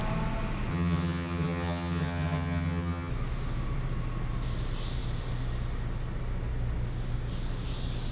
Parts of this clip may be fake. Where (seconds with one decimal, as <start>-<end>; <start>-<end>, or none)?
0.7-3.1